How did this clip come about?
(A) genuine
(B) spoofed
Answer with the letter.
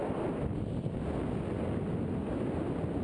A